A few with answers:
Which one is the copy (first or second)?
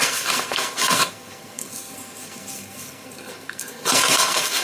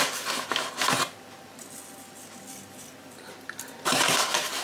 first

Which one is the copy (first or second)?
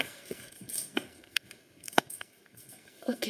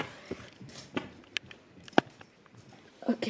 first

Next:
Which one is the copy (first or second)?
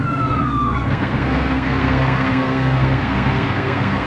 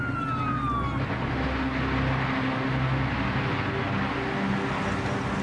first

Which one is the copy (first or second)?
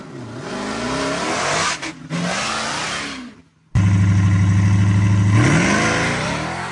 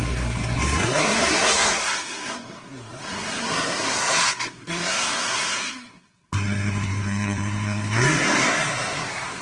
second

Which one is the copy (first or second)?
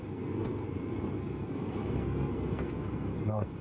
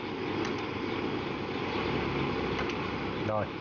first